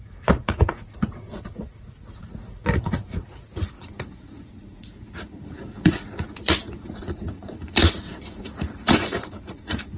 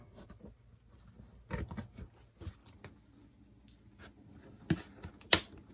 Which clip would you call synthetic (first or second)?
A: first